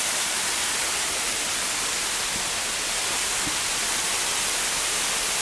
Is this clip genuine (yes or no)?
yes